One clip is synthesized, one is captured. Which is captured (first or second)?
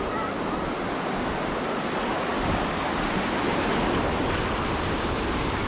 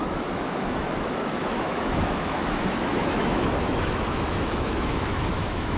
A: first